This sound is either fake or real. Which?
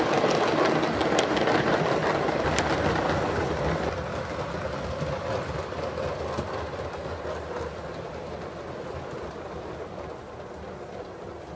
real